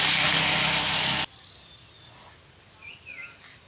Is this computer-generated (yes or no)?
no